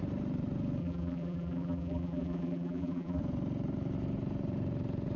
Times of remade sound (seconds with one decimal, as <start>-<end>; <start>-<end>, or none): 0.8-3.2